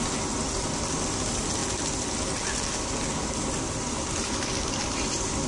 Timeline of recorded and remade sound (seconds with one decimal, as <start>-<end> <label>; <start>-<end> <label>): 0.0-5.5 recorded